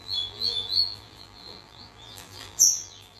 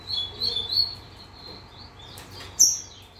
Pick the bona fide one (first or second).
second